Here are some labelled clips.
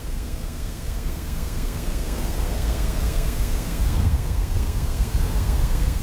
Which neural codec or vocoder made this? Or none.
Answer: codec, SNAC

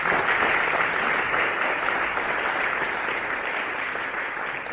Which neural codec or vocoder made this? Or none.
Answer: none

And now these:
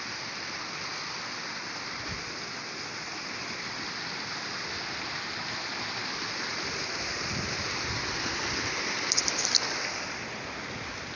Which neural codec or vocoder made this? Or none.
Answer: none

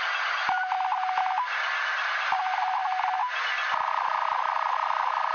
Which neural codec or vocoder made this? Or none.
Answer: none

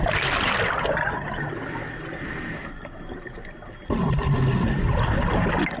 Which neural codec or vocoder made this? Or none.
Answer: none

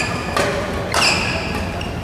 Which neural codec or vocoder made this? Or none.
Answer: none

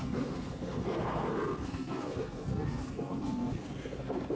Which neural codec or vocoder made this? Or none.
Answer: codec, SNAC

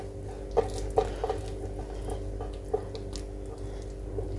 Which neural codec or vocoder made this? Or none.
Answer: none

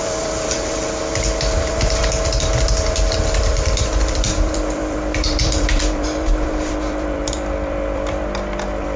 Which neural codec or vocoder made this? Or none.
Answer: vocoder, BigVGAN v2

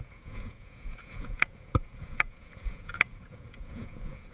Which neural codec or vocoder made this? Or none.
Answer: vocoder, Vocos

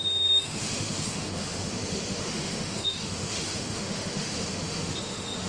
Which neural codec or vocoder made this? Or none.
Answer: autoencoder, DAC-VAE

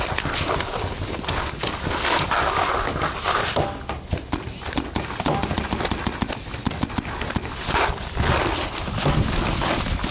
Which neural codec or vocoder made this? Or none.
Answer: none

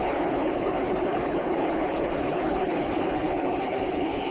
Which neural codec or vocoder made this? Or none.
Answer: codec, HILCodec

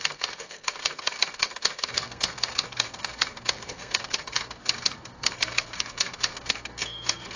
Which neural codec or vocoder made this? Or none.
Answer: codec, SNAC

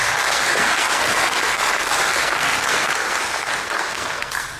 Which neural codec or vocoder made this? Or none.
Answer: codec, SNAC